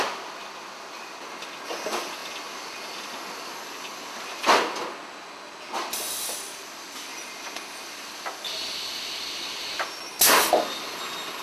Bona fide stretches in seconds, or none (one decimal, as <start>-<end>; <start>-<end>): 0.0-11.4